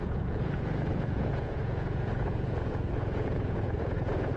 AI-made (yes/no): yes